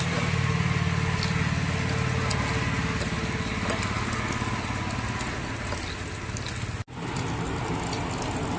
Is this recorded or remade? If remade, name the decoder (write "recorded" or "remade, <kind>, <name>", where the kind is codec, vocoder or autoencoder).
recorded